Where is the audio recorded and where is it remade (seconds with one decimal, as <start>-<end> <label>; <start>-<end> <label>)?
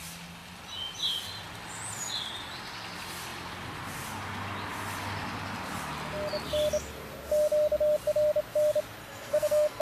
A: 0.0-9.0 recorded; 9.0-9.8 remade